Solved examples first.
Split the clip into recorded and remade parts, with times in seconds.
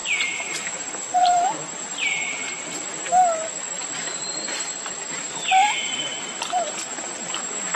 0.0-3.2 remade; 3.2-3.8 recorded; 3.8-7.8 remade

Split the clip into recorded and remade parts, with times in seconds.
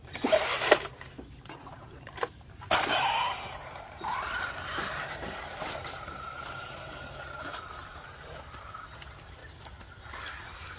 0.0-9.4 remade; 9.4-10.8 recorded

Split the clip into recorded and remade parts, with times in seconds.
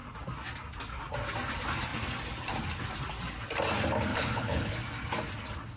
0.0-4.1 recorded; 4.1-4.7 remade; 4.7-5.8 recorded